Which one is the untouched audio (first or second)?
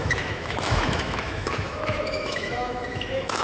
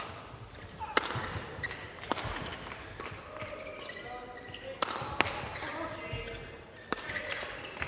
second